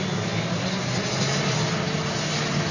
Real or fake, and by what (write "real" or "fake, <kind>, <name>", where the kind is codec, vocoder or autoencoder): real